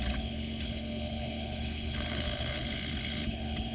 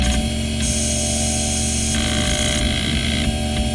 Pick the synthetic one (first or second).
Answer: first